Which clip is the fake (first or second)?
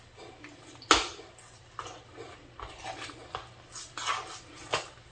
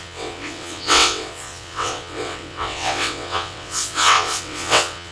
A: second